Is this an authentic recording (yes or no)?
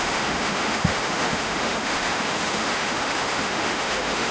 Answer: no